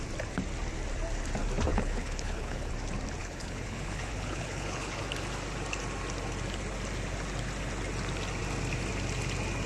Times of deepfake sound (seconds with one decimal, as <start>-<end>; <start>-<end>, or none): 1.7-2.7; 3.2-5.0

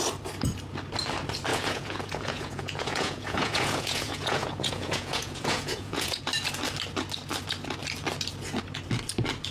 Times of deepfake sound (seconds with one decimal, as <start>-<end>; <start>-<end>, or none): 1.5-6.2